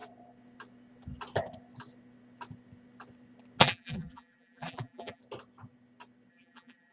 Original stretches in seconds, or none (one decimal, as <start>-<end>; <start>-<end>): 0.0-3.6; 5.2-6.3